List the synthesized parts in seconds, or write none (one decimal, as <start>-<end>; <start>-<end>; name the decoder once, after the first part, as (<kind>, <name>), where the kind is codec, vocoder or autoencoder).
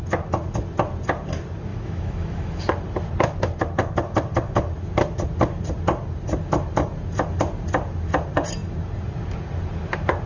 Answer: 1.7-2.6 (autoencoder, DAC-VAE)